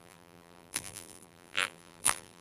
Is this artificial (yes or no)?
yes